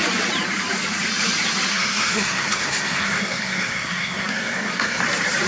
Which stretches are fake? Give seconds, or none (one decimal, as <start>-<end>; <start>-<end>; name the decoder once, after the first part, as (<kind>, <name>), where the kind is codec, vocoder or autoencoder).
1.7-5.0 (codec, SNAC)